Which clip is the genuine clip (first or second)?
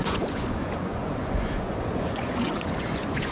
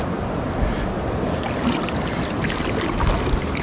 second